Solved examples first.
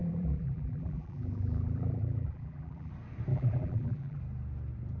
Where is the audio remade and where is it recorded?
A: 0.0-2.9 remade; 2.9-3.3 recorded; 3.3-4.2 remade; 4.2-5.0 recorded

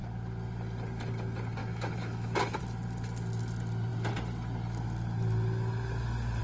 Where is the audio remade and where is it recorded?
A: 0.0-1.6 recorded; 1.6-2.6 remade; 2.6-6.4 recorded

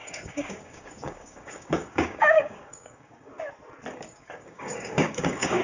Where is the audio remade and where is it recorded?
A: 0.0-3.3 remade; 3.3-3.9 recorded; 3.9-5.6 remade

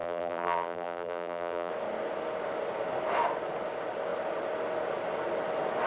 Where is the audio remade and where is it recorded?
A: 0.0-1.7 remade; 1.7-5.9 recorded

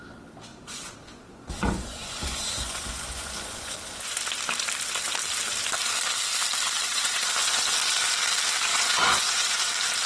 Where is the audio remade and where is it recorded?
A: 0.0-0.5 recorded; 0.5-4.2 remade; 4.2-6.8 recorded; 6.8-7.6 remade; 7.6-8.7 recorded; 8.7-9.7 remade; 9.7-10.1 recorded